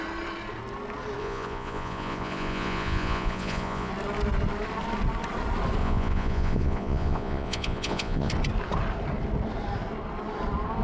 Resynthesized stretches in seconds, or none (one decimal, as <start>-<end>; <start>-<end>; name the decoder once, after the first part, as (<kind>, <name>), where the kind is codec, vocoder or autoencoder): 1.2-3.9 (vocoder, Vocos); 5.8-8.3